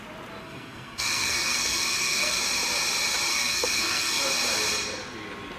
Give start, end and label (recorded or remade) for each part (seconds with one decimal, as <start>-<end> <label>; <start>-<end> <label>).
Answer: 0.0-0.4 recorded; 0.4-2.4 remade; 2.4-3.3 recorded; 3.3-4.2 remade; 4.2-5.6 recorded